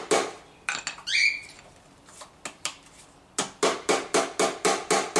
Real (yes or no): yes